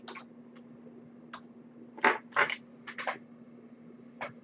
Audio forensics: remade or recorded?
recorded